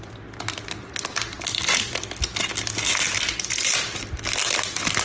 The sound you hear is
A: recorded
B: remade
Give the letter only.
A